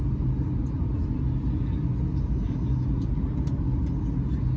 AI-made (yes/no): no